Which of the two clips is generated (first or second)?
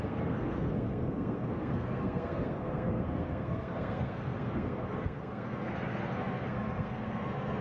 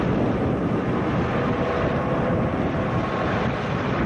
first